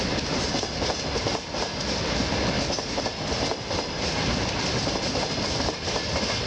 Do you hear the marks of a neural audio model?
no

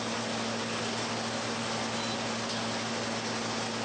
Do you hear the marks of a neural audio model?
no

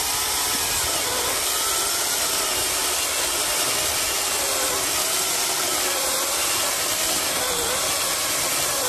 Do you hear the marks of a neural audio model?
yes